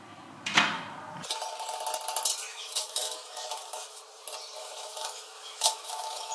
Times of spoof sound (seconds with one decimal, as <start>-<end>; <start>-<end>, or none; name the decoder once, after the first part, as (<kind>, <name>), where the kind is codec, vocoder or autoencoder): 2.5-4.0 (autoencoder, DAC-VAE); 4.6-6.3